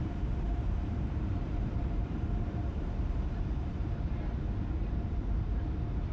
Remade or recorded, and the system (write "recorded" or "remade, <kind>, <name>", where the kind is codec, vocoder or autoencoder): remade, vocoder, BigVGAN v2